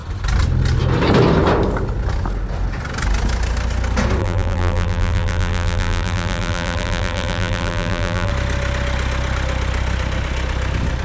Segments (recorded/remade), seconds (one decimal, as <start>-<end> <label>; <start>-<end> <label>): 0.0-4.2 recorded; 4.2-8.3 remade; 8.3-11.0 recorded